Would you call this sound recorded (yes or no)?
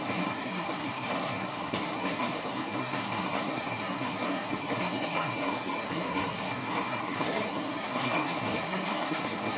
no